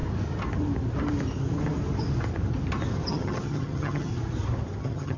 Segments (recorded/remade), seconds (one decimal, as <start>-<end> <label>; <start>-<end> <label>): 0.0-3.1 recorded; 3.1-4.1 remade; 4.1-4.8 recorded; 4.8-5.2 remade